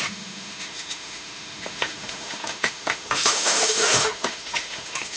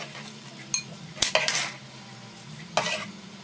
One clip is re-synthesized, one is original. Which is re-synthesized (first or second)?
first